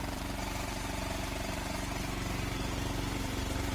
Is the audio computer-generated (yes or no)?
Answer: yes